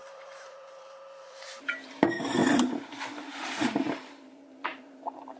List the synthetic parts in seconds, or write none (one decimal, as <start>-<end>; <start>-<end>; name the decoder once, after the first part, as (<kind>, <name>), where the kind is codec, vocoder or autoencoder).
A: 0.0-2.4 (vocoder, BigVGAN v2); 4.0-5.4